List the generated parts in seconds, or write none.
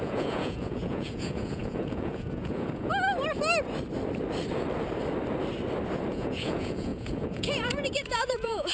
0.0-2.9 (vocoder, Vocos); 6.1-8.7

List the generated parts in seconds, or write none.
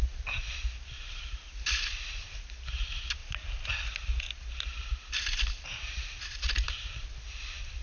none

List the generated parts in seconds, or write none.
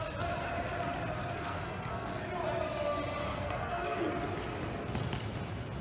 1.3-2.2 (codec, SNAC); 3.3-4.1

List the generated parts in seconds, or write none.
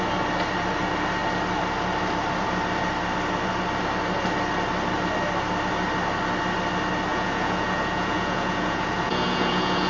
7.1-9.9 (vocoder, Vocos)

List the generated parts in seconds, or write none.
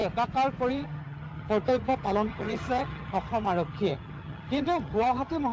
0.7-5.5 (vocoder, HiFi-GAN)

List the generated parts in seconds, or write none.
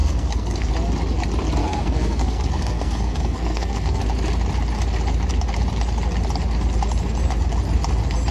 0.0-0.7 (codec, SNAC); 1.6-4.0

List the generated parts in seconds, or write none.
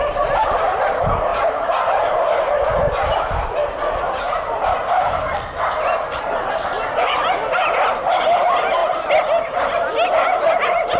0.0-8.8 (vocoder, BigVGAN v2)